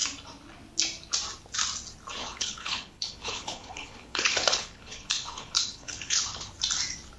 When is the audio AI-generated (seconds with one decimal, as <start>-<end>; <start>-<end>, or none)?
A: 2.2-6.5